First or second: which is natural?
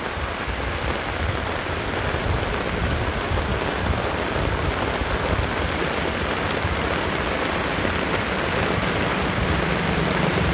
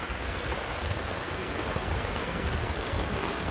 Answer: first